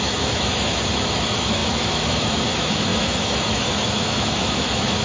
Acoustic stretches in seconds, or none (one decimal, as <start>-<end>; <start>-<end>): none